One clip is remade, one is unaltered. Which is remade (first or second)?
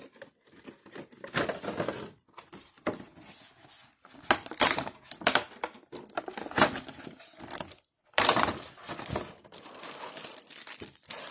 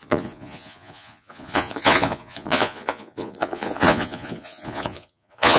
second